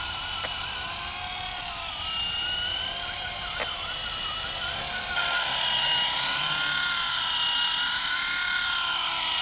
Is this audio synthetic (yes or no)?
no